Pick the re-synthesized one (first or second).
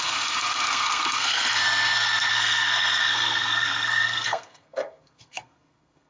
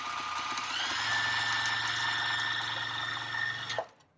first